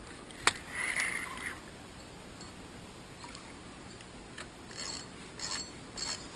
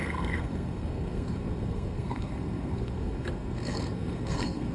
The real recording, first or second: first